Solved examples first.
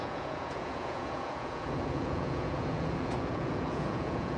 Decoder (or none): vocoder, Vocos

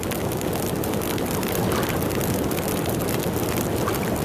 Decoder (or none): none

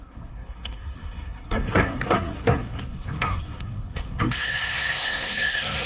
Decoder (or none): codec, SNAC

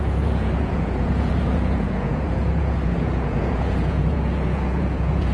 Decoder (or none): vocoder, Vocos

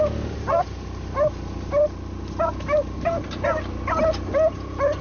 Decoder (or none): none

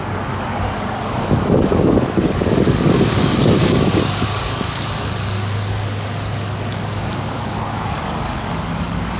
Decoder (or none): codec, DAC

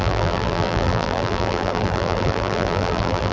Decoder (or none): vocoder, BigVGAN v2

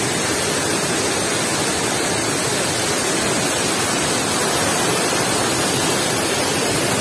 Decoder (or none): none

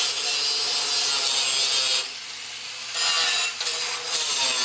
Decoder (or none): none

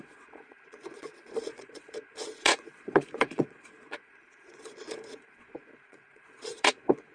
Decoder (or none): vocoder, Vocos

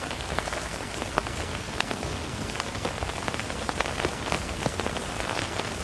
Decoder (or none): codec, SNAC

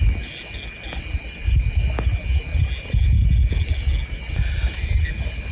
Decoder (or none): none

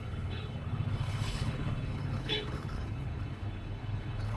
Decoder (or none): codec, HILCodec